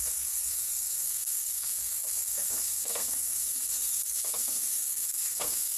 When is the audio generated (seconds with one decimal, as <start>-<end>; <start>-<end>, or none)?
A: 0.0-5.8